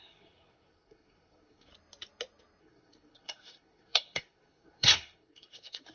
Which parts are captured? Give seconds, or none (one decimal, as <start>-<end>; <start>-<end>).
1.7-2.6